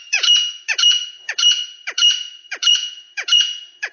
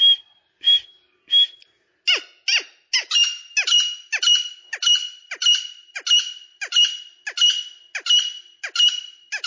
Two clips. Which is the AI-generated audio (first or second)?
first